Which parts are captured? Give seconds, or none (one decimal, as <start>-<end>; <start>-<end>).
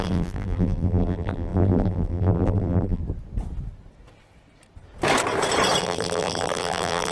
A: 3.0-5.8